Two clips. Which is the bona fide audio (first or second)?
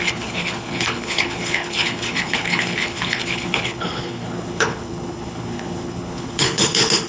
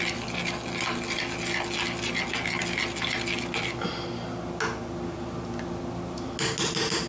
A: second